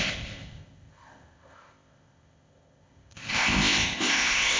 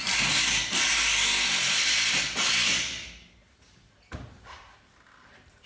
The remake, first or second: first